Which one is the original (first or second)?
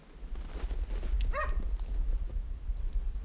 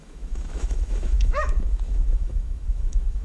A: first